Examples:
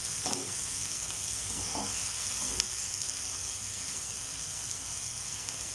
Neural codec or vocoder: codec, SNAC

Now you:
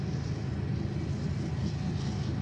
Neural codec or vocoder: none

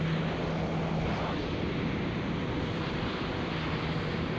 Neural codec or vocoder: none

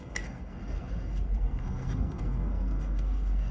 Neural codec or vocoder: codec, SNAC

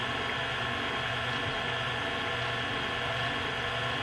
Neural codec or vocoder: none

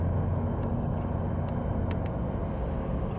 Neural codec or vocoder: none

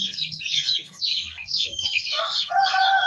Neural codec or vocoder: codec, SNAC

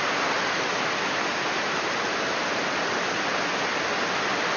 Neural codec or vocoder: none